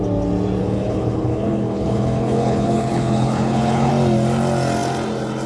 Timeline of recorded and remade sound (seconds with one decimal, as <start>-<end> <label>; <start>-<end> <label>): 0.0-0.6 recorded; 0.6-3.9 remade; 3.9-5.5 recorded